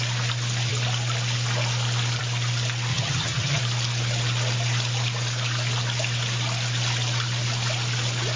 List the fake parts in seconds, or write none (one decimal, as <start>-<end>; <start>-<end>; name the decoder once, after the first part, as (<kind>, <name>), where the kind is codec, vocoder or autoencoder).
2.9-3.6 (vocoder, HiFi-GAN)